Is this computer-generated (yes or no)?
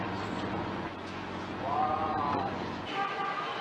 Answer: yes